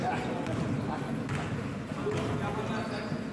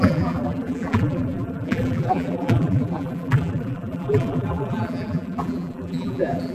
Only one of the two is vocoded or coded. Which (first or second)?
second